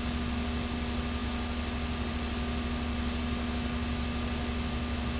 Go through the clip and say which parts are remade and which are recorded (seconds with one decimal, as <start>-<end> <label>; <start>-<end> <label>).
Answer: 0.0-5.2 recorded